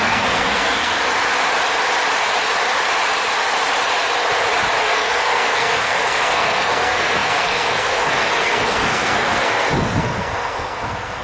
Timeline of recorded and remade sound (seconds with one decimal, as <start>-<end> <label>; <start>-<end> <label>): 0.0-1.0 remade; 1.0-4.8 recorded; 4.8-11.2 remade